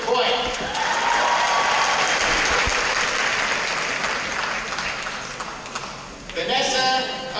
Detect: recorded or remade recorded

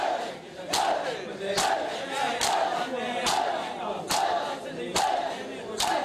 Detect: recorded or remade recorded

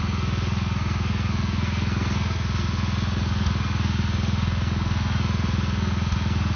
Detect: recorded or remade remade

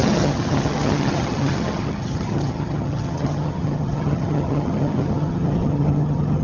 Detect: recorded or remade remade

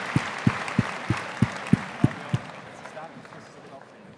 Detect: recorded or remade recorded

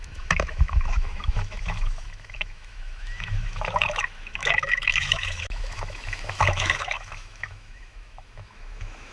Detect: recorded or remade remade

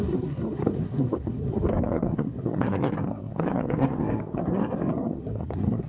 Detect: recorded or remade remade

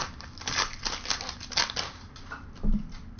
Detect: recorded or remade recorded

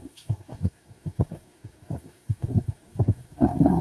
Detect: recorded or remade remade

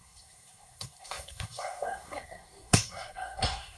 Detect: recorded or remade remade